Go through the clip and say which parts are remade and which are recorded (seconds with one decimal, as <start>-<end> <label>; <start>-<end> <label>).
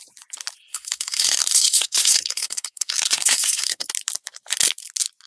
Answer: 0.0-0.7 recorded; 0.7-3.9 remade; 3.9-5.3 recorded